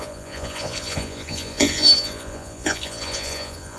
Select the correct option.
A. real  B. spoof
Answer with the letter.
B